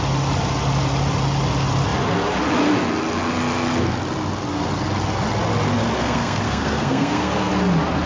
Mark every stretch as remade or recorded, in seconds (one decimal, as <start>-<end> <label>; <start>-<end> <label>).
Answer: 0.0-6.0 recorded; 6.0-7.5 remade; 7.5-8.1 recorded